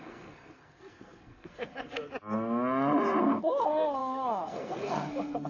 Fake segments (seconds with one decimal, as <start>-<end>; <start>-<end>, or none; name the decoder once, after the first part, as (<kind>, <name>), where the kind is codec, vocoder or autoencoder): 0.0-2.0 (codec, SNAC); 3.2-5.5